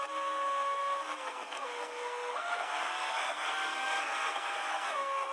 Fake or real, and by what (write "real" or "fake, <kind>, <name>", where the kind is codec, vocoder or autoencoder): fake, codec, SNAC